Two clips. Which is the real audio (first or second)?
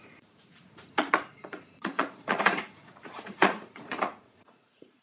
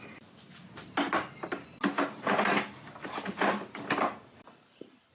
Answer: second